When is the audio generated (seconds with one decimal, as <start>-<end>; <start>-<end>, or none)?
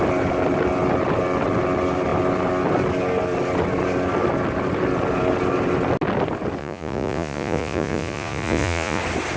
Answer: 6.6-9.0